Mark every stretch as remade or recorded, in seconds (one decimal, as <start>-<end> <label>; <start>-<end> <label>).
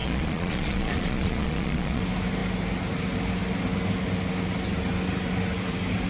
0.0-2.0 remade; 2.0-6.1 recorded